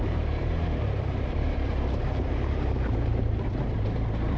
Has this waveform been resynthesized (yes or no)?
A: yes